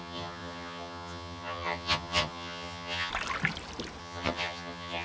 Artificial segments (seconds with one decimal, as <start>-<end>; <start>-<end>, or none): 0.0-3.1; 4.0-5.0